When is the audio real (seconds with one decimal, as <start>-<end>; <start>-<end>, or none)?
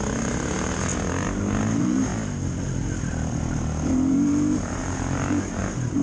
0.9-1.7; 2.1-4.1; 4.8-5.6